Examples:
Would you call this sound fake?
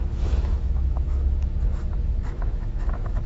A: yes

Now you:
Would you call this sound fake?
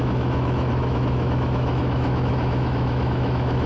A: yes